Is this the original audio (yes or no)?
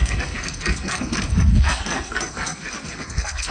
no